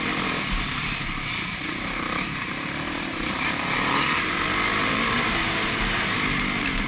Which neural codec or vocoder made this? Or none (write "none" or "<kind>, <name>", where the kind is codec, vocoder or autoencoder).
vocoder, BigVGAN v2